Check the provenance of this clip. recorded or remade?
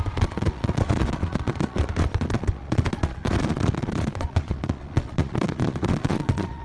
remade